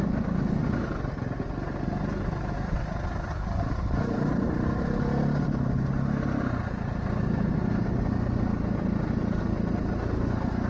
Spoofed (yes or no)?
no